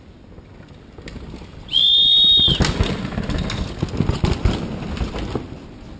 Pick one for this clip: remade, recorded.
recorded